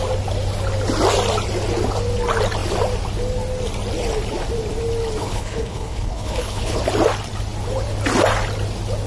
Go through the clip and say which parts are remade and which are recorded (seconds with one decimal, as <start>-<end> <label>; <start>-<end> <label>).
0.0-5.2 recorded; 5.2-6.8 remade; 6.8-9.1 recorded